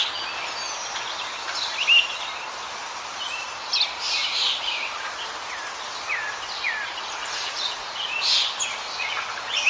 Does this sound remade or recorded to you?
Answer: recorded